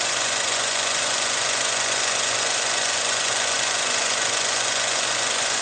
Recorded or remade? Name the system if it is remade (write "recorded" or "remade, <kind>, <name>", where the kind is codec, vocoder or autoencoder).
remade, vocoder, Vocos